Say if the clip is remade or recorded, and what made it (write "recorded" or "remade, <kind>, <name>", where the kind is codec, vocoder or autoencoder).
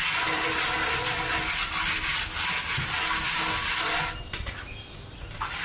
recorded